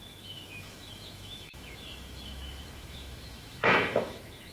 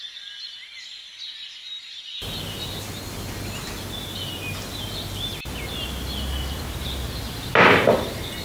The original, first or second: second